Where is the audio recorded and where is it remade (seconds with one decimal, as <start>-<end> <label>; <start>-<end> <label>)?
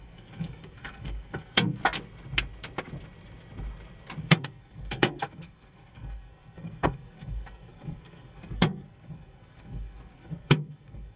0.0-1.8 remade; 1.8-4.2 recorded; 4.2-11.2 remade